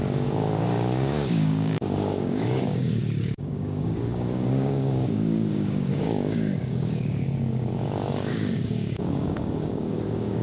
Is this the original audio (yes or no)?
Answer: no